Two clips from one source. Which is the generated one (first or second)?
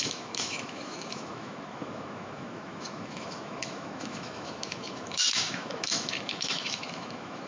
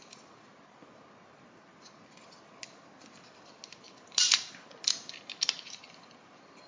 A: first